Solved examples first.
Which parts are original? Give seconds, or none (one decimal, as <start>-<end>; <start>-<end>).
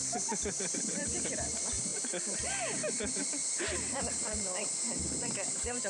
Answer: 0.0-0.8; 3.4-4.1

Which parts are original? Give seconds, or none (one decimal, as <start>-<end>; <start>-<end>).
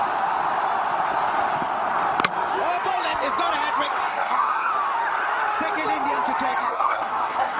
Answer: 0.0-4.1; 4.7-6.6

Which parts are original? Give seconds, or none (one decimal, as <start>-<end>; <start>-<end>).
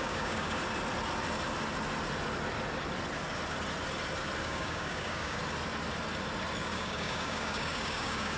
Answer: 0.6-4.4; 5.4-6.6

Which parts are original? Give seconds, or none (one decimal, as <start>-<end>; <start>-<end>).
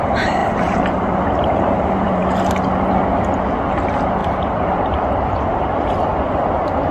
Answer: 2.2-3.7; 6.1-6.9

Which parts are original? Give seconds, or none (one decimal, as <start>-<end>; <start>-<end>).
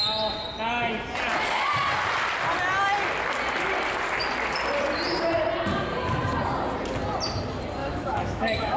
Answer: 0.0-7.8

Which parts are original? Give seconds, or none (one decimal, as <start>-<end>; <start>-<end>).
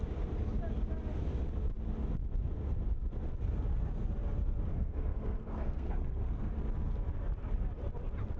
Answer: 0.0-4.7; 6.5-8.4